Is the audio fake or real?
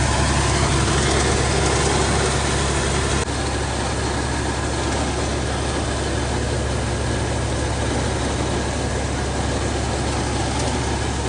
real